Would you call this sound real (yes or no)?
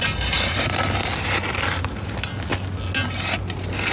yes